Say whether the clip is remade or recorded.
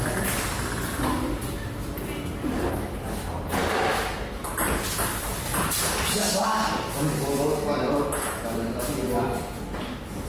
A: recorded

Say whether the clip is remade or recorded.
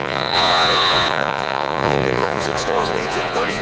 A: remade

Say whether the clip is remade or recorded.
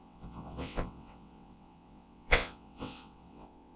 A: remade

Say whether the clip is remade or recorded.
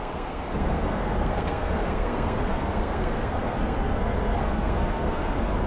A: remade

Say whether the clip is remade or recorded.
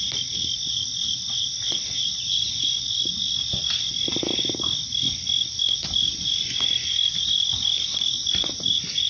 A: recorded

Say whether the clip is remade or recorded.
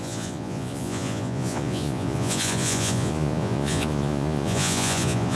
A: remade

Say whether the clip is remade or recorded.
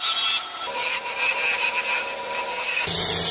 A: recorded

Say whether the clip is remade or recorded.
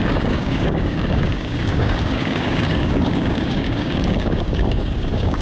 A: remade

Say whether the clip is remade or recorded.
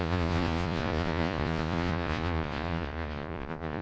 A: remade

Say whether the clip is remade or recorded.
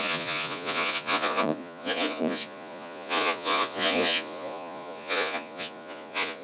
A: remade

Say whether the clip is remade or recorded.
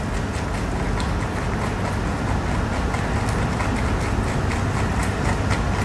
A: recorded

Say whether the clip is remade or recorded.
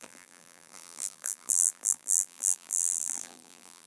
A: remade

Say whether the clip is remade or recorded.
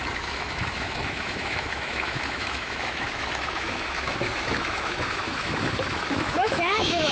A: remade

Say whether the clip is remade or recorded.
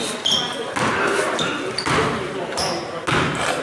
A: recorded